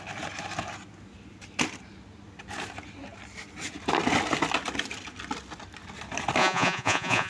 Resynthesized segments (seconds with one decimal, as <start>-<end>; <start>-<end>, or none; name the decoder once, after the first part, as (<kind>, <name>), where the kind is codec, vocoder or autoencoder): 6.4-7.3 (vocoder, Vocos)